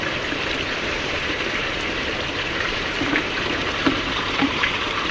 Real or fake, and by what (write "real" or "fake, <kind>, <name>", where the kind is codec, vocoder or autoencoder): fake, vocoder, BigVGAN v2